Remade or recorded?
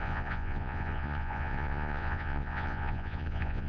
remade